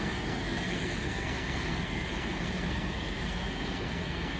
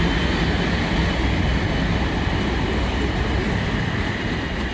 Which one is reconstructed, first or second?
first